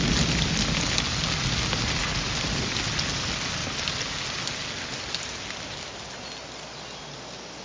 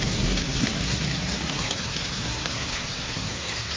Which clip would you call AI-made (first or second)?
second